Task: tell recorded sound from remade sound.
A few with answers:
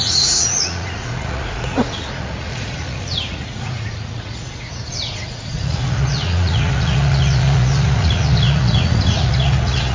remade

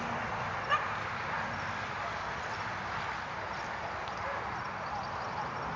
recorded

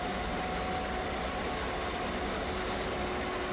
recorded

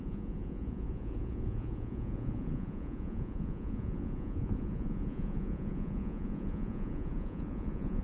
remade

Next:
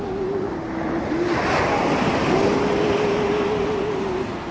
recorded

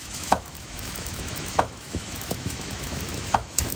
remade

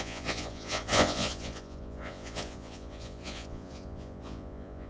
remade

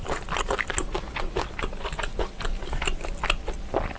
recorded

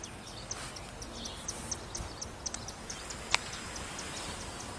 recorded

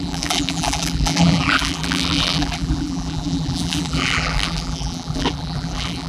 remade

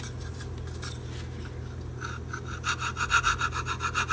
recorded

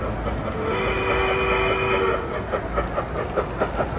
recorded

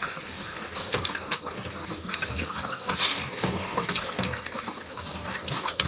remade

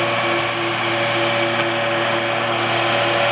recorded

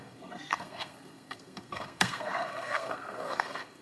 remade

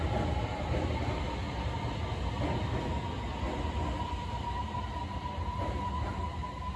recorded